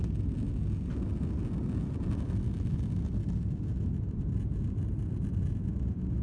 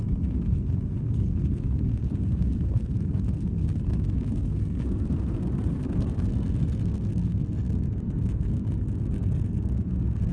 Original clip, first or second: first